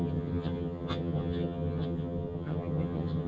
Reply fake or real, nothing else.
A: fake